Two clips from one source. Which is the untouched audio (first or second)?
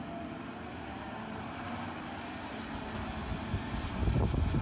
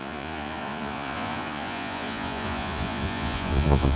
first